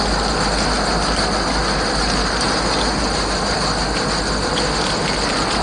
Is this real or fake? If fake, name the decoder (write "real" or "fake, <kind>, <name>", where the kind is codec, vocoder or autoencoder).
real